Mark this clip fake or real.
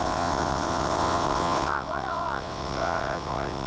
fake